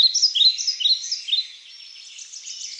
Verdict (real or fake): real